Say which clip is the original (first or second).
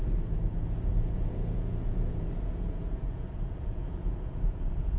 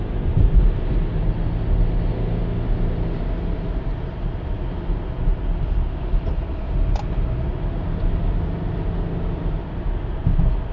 second